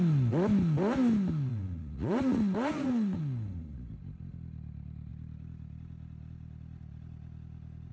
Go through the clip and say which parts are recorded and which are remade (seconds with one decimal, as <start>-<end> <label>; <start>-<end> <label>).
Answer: 0.0-1.5 recorded; 1.5-3.2 remade; 3.2-7.9 recorded